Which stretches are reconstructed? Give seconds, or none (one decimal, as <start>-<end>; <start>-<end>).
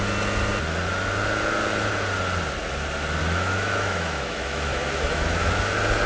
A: 3.2-5.5